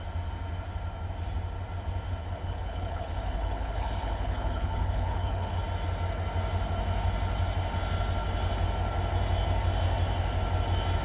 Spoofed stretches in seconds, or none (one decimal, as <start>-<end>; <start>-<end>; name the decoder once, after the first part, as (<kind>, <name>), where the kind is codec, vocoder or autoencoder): 2.2-5.6 (codec, HILCodec)